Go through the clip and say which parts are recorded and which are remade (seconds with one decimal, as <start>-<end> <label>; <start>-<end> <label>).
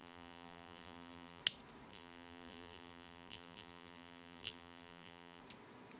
0.0-1.4 remade; 1.4-1.9 recorded; 1.9-5.4 remade; 5.4-6.0 recorded